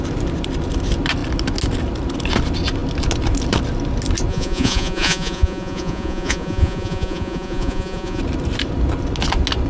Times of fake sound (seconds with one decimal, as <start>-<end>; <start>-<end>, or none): 4.3-8.2